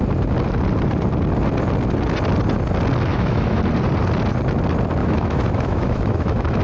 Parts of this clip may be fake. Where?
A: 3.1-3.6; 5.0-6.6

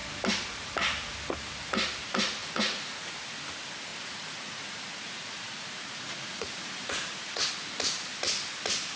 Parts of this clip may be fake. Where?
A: 2.4-3.1; 3.9-7.5

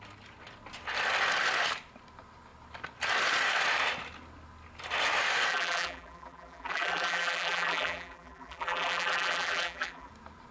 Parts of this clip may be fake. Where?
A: 5.5-10.1

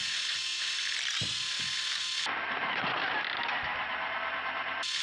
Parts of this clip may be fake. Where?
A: 0.0-0.6